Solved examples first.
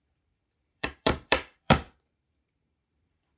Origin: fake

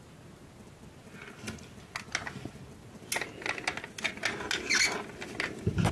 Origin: real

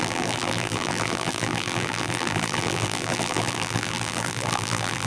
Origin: fake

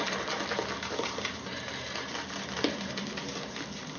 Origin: fake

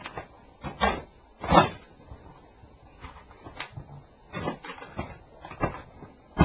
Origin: real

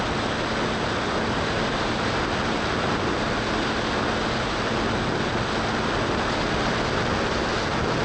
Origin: real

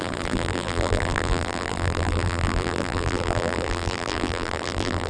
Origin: fake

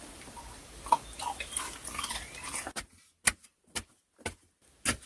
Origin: real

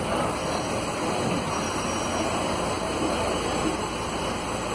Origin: real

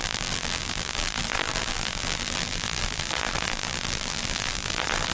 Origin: fake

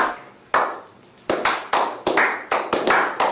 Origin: real